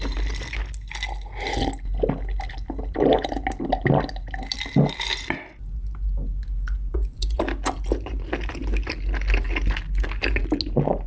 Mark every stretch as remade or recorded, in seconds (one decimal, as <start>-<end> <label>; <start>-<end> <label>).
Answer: 0.0-6.9 recorded; 6.9-7.4 remade; 7.4-11.1 recorded